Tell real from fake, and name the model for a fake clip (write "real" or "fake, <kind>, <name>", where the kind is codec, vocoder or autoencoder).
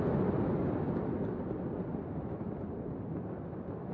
real